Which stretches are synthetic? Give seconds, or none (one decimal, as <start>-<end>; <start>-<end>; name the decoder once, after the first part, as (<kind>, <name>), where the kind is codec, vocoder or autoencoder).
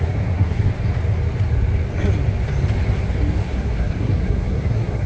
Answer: 0.0-0.7 (codec, SNAC); 3.4-5.1